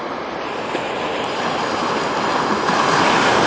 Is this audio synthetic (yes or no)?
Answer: no